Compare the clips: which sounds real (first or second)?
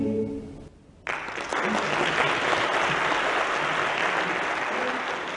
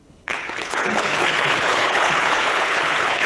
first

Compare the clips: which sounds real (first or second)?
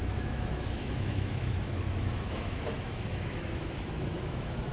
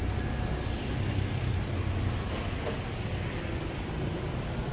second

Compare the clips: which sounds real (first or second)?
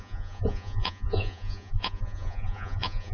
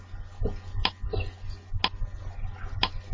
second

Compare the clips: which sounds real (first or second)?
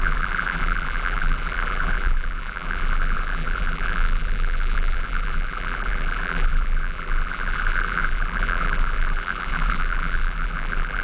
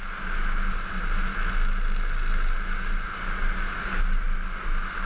second